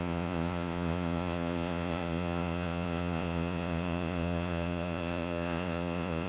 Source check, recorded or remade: remade